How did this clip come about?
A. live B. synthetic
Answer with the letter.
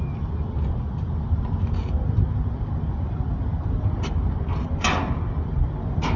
A